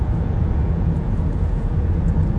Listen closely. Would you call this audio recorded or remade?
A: remade